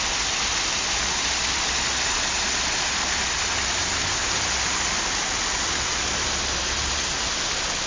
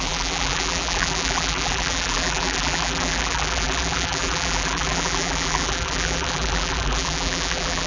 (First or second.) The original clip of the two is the first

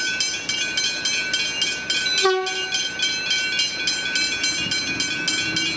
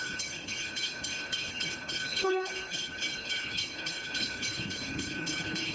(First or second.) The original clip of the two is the first